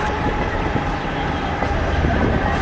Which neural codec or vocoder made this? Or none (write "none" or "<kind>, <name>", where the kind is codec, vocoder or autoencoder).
vocoder, BigVGAN v2